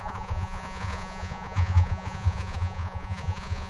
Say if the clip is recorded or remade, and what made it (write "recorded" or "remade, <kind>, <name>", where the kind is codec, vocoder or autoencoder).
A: remade, vocoder, Vocos